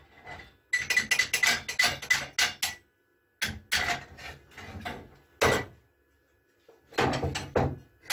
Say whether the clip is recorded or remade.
recorded